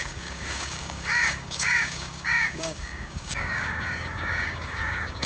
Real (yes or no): no